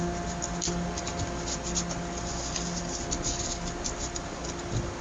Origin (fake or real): real